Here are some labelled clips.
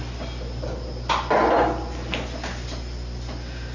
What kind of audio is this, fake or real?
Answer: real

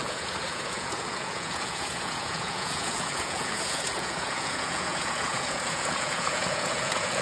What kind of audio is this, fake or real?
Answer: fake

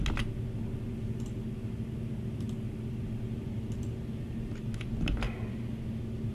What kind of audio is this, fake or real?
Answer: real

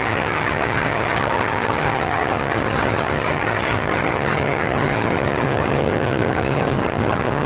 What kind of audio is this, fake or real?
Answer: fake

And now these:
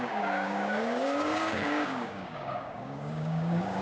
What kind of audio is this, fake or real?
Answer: fake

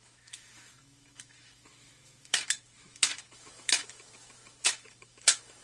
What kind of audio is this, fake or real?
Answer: fake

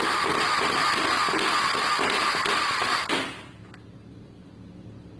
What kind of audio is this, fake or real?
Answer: real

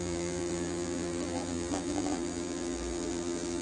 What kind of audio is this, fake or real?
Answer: fake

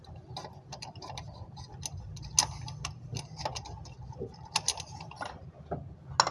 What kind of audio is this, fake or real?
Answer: real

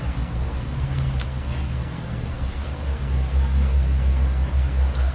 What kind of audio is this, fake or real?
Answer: fake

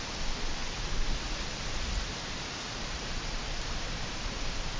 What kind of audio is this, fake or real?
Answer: real